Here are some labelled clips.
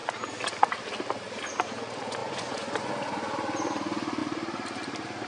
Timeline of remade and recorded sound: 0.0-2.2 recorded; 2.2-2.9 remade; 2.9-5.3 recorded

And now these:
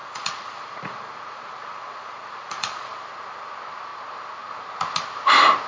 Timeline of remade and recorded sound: 0.0-2.9 remade; 2.9-5.7 recorded

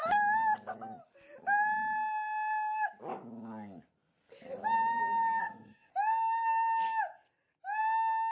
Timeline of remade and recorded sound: 0.0-5.4 recorded; 5.4-5.9 remade; 5.9-8.3 recorded